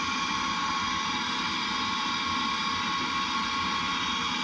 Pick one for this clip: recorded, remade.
recorded